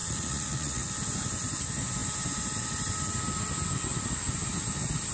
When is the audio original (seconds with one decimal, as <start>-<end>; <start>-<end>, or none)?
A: 0.9-5.1